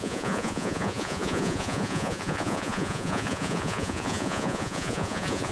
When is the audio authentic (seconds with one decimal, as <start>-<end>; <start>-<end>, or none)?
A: none